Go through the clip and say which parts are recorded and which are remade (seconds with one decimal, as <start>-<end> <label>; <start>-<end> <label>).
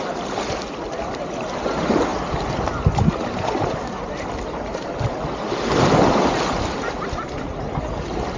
0.0-2.1 recorded; 2.1-6.4 remade; 6.4-8.4 recorded